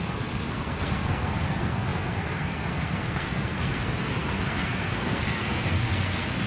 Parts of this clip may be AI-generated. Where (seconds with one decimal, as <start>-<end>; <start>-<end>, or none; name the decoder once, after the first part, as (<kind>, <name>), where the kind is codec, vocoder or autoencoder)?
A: 0.0-6.5 (codec, SNAC)